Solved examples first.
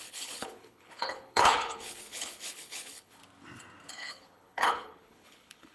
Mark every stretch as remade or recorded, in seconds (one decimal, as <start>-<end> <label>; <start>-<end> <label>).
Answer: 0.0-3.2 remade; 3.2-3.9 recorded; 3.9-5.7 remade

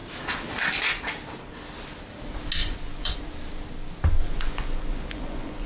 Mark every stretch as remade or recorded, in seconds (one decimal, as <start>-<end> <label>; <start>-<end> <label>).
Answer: 0.0-2.6 recorded; 2.6-3.2 remade; 3.2-4.2 recorded; 4.2-5.7 remade

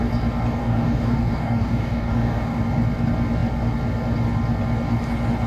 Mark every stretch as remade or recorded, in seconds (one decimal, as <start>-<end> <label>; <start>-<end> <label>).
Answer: 0.0-0.6 recorded; 0.6-2.6 remade; 2.6-5.5 recorded

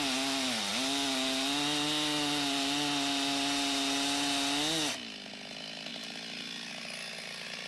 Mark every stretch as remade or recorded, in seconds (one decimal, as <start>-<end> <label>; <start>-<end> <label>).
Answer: 0.0-7.7 recorded